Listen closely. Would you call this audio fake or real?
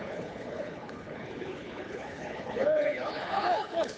fake